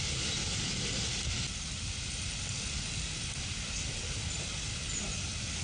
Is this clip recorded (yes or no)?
yes